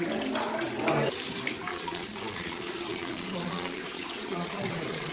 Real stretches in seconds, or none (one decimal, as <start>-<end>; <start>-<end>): 0.0-1.7